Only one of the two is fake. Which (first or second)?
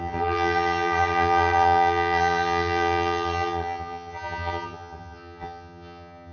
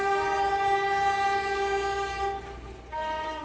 first